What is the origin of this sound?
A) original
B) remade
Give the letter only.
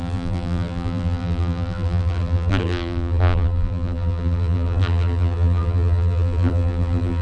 B